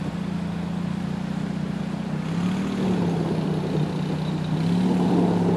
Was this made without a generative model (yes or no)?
yes